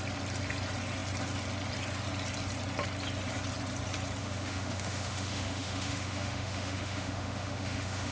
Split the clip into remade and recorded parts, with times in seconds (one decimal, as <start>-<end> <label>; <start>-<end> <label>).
0.0-4.2 recorded; 4.2-8.1 remade